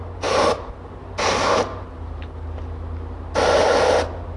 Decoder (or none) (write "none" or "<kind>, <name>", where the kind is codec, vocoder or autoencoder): none